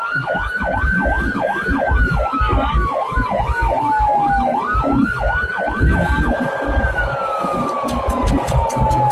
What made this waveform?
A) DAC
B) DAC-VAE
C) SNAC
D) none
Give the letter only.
A